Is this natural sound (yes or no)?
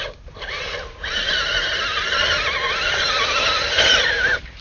no